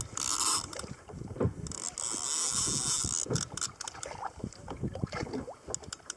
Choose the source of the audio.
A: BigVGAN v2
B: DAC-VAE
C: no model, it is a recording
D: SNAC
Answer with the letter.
C